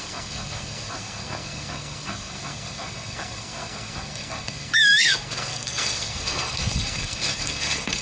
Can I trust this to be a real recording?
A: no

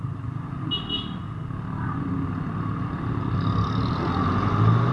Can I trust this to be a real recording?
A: yes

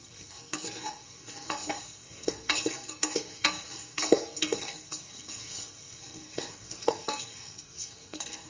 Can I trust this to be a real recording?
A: no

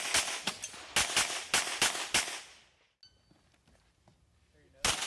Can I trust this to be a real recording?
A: yes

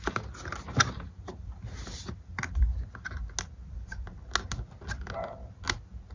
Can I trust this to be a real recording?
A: yes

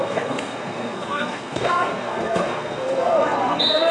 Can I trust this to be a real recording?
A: no